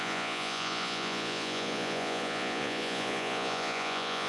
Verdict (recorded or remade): remade